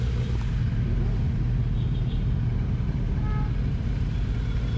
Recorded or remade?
recorded